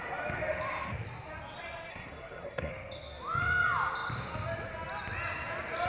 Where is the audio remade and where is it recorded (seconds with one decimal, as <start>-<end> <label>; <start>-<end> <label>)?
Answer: 0.0-1.9 recorded; 1.9-2.7 remade; 2.7-5.9 recorded